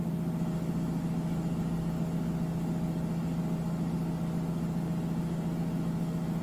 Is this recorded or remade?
recorded